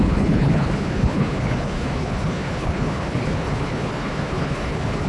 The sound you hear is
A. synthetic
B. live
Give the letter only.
A